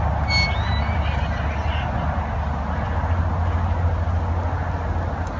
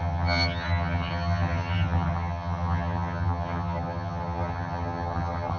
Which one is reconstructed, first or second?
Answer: second